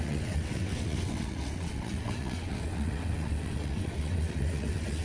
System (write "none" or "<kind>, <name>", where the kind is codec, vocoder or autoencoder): vocoder, WaveNeXt